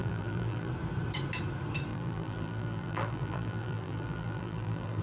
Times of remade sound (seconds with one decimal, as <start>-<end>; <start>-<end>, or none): 0.0-0.7; 1.9-5.0